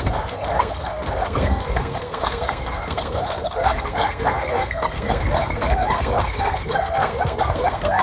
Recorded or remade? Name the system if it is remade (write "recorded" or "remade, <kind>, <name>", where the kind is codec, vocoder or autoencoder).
remade, codec, SNAC